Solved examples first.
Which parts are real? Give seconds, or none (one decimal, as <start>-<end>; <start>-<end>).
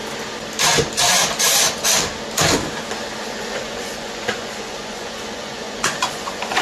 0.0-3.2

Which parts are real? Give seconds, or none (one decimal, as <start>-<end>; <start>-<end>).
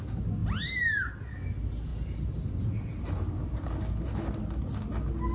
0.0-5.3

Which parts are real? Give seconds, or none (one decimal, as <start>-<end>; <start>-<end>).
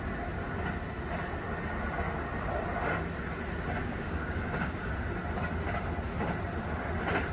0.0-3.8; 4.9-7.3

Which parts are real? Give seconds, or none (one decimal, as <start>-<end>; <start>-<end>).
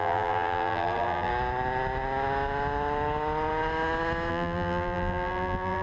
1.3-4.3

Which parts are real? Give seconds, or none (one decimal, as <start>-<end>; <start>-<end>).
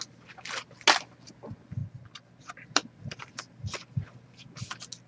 0.0-5.1